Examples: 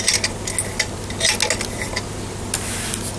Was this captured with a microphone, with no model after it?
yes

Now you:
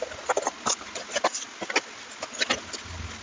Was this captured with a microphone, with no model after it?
yes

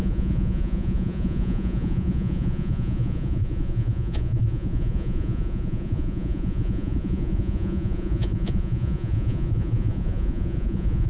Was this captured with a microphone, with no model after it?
no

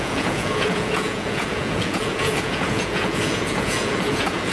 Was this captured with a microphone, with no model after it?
no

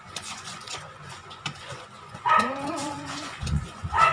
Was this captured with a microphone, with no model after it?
no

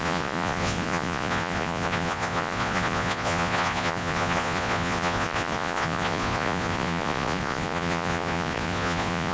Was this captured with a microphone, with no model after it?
no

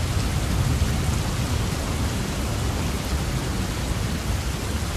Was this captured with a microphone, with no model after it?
yes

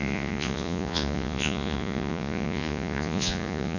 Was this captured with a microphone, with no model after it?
no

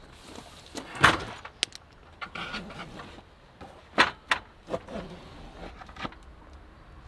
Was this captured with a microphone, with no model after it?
yes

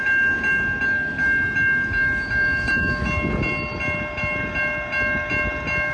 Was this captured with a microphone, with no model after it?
yes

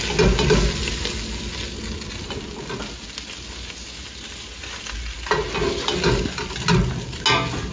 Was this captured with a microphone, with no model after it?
yes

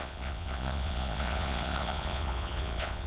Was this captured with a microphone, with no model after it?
no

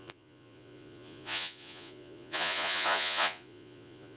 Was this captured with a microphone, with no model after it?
no